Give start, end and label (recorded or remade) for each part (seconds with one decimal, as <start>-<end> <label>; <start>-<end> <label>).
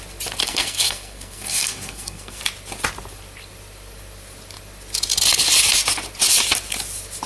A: 0.0-0.4 recorded; 0.4-2.4 remade; 2.4-7.3 recorded